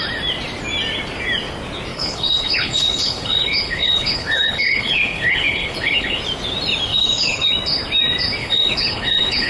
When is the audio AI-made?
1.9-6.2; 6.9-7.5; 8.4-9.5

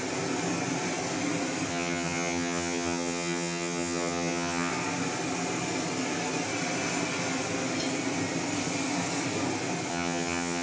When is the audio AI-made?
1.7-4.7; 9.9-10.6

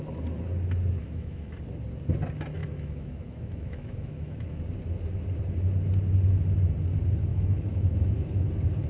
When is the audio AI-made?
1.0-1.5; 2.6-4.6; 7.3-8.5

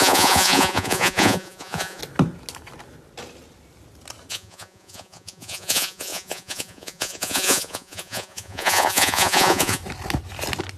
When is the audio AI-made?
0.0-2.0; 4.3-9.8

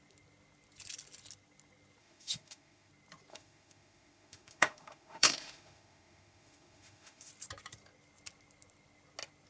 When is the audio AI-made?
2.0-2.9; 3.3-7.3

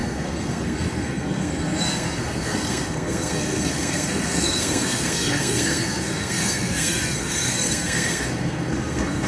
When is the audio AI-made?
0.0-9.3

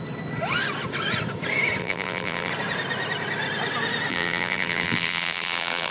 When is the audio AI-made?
1.8-2.5; 4.1-5.9

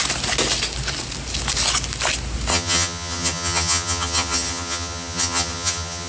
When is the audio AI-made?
2.5-6.1